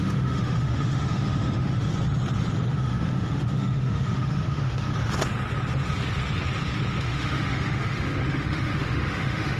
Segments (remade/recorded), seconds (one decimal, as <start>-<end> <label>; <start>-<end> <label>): 0.0-1.9 remade; 1.9-2.7 recorded; 2.7-4.9 remade; 4.9-7.0 recorded; 7.0-9.6 remade